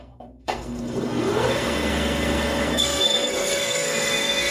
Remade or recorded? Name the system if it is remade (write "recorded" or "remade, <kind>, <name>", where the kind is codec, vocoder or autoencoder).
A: remade, codec, SNAC